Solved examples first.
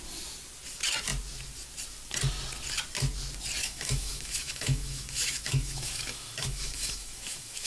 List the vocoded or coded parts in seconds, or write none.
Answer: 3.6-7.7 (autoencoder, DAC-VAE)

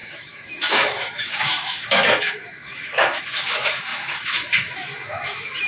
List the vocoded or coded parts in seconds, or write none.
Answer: 0.0-5.7 (autoencoder, DAC-VAE)

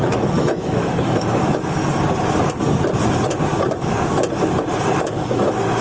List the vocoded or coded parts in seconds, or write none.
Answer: 0.0-1.8 (autoencoder, DAC-VAE); 5.3-5.8

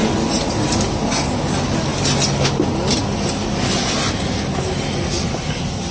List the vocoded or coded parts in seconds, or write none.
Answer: none

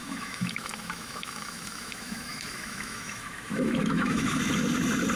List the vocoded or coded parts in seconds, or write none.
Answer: 0.0-4.4 (autoencoder, DAC-VAE)